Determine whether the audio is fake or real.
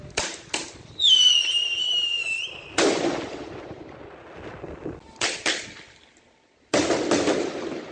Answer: real